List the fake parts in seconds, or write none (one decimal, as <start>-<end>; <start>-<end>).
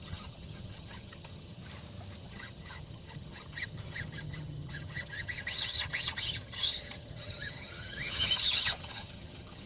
0.0-1.6; 2.2-9.7